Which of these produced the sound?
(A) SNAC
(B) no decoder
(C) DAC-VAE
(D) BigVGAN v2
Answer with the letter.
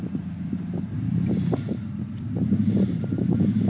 D